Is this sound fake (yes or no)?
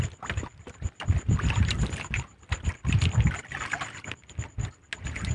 no